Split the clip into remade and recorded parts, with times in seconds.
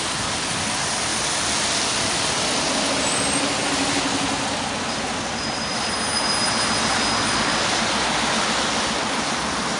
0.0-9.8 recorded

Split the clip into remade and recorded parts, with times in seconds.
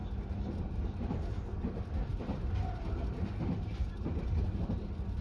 0.0-5.2 recorded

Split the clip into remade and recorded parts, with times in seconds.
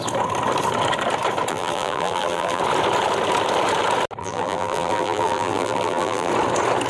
0.0-1.5 recorded; 1.5-2.6 remade; 2.6-4.2 recorded; 4.2-6.3 remade; 6.3-6.9 recorded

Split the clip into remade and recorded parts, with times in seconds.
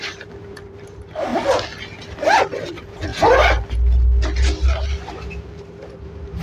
0.0-1.3 remade; 1.3-2.7 recorded; 2.7-3.1 remade; 3.1-5.1 recorded; 5.1-6.4 remade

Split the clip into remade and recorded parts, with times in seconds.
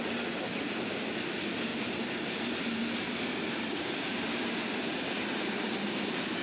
0.0-1.7 recorded; 1.7-5.5 remade; 5.5-6.4 recorded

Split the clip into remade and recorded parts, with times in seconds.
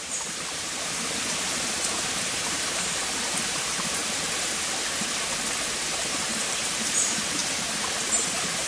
0.0-4.0 remade; 4.0-5.8 recorded; 5.8-7.4 remade; 7.4-8.1 recorded; 8.1-8.7 remade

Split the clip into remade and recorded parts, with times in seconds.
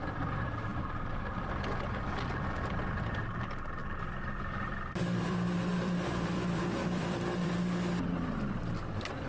0.0-3.8 recorded; 3.8-7.5 remade; 7.5-9.3 recorded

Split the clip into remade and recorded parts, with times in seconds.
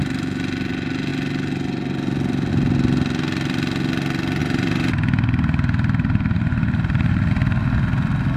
0.0-4.4 recorded; 4.4-7.3 remade; 7.3-8.4 recorded